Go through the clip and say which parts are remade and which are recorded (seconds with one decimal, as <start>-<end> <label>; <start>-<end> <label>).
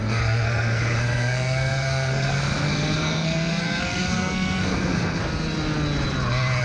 0.0-5.2 remade; 5.2-6.6 recorded